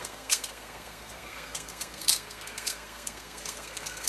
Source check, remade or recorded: remade